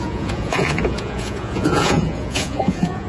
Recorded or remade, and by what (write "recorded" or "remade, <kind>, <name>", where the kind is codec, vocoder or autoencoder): remade, vocoder, Vocos